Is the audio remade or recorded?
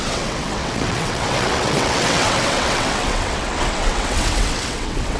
remade